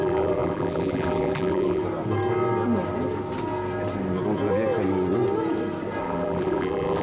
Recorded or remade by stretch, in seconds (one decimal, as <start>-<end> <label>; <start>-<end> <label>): 0.0-1.8 remade; 1.8-6.0 recorded; 6.0-7.0 remade